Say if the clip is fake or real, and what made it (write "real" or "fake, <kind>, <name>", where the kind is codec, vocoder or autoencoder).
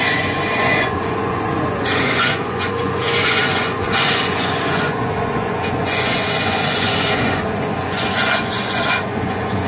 fake, vocoder, Vocos